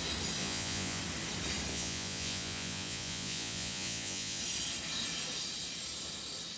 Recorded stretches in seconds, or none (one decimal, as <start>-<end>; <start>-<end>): 0.0-0.4; 1.0-1.7; 4.4-6.6